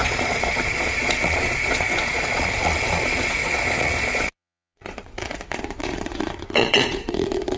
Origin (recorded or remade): remade